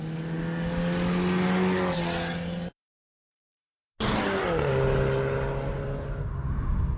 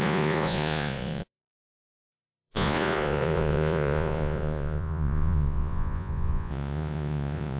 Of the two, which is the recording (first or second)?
first